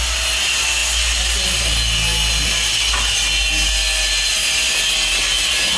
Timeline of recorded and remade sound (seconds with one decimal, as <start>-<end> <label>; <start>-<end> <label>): 0.0-5.8 recorded